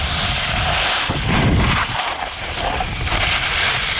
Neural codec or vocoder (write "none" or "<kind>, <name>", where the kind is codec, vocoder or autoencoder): none